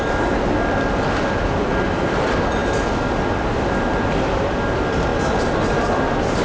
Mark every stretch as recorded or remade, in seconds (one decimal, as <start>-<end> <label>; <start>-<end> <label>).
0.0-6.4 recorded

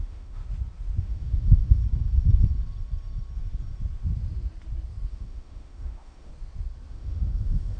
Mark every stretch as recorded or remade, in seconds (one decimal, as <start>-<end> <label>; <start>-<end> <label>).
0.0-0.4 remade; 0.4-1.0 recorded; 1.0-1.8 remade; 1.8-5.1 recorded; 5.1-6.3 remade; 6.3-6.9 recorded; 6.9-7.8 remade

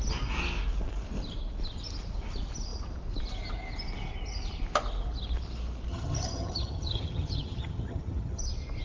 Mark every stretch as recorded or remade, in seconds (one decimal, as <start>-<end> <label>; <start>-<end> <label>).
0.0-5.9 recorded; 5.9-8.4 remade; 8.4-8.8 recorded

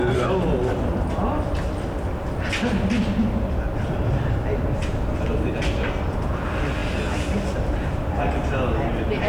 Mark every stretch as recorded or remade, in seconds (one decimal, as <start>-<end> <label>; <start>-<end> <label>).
0.0-9.3 recorded